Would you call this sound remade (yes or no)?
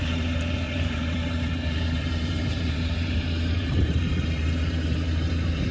yes